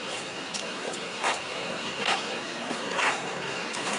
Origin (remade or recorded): remade